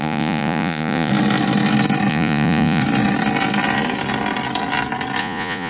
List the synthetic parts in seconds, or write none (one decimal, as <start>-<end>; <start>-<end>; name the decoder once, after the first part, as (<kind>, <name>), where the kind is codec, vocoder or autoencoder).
0.0-1.1 (vocoder, Vocos); 2.1-2.8; 5.2-5.7